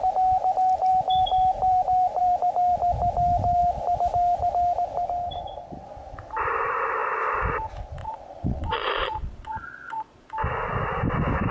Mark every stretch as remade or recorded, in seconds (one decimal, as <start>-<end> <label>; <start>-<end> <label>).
0.0-8.0 recorded; 8.0-10.3 remade; 10.3-11.5 recorded